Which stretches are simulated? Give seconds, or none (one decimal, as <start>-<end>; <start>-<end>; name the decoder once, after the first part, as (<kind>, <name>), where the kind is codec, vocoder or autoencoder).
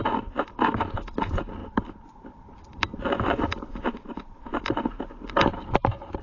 1.6-4.6 (vocoder, BigVGAN v2)